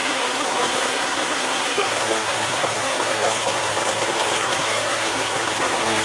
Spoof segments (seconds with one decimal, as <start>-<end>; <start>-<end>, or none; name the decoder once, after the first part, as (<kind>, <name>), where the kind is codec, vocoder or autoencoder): 0.0-6.0 (codec, SNAC)